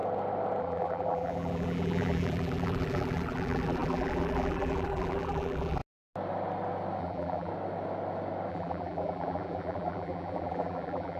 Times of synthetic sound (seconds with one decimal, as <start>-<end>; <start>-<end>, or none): 0.6-5.8; 7.0-7.5; 8.5-11.2